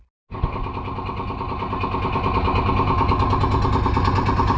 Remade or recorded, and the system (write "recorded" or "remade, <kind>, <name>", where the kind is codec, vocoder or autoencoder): recorded